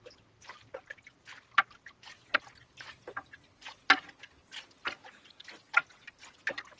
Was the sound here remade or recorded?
recorded